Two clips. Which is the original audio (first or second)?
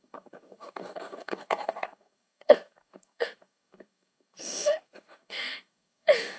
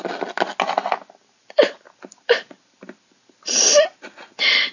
second